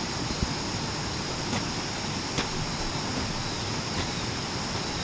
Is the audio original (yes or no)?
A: yes